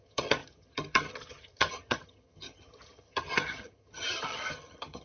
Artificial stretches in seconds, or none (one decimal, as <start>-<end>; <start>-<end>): 0.0-5.0